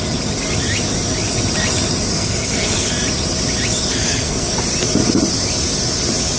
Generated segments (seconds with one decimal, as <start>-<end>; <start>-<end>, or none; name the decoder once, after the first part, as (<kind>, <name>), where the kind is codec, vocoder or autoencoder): 2.1-2.9 (codec, SNAC); 3.9-4.5